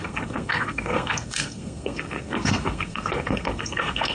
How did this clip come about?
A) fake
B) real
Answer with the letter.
A